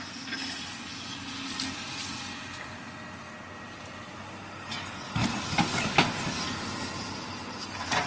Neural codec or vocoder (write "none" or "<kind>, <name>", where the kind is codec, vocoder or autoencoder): none